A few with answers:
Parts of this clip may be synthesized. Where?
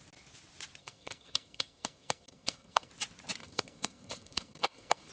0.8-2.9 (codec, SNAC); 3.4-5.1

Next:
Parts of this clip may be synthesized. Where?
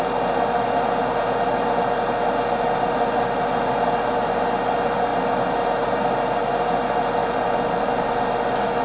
none